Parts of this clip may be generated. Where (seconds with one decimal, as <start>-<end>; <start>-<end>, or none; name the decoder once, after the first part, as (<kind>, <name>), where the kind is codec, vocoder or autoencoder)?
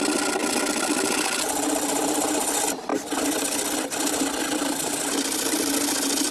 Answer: 0.0-2.9 (vocoder, BigVGAN v2); 4.4-6.3